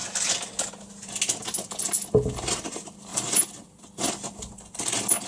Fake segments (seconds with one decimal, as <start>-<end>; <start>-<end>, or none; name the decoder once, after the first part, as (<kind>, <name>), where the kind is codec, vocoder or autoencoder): 3.1-4.0 (vocoder, BigVGAN v2)